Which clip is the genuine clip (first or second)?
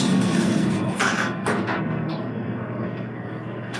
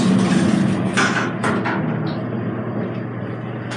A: second